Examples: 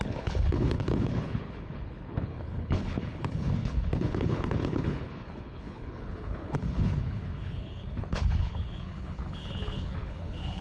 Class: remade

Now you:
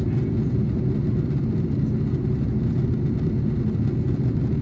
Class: recorded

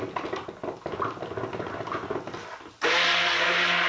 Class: recorded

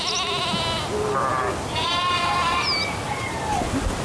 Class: recorded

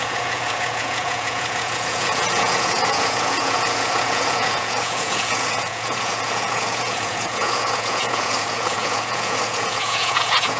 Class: remade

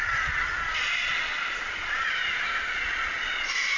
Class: remade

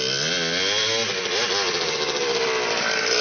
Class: recorded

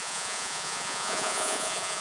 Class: remade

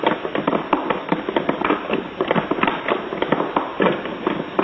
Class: recorded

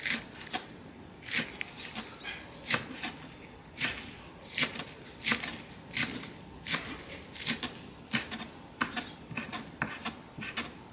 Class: recorded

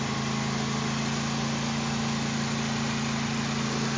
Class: recorded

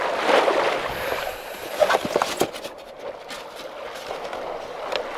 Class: recorded